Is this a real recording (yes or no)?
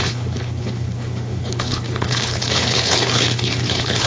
no